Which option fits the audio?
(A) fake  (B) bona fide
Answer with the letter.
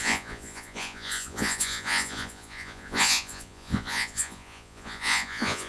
A